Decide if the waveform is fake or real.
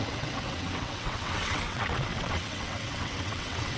fake